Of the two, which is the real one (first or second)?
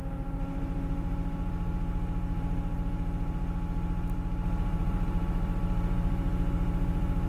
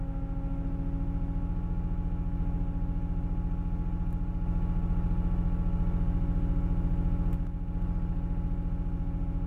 second